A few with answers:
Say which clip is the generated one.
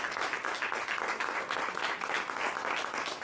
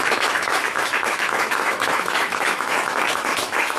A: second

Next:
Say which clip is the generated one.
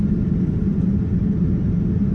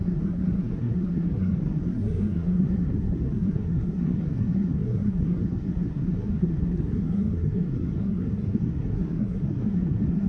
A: second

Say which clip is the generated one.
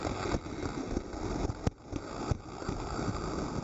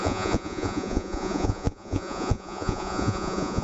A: second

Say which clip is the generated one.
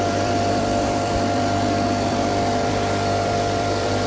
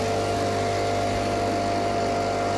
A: first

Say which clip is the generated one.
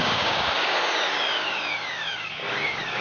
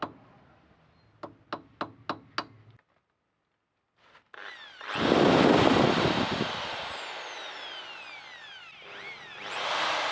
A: first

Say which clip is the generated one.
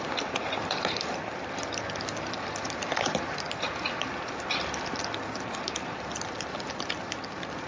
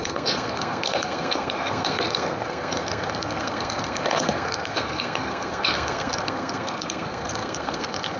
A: second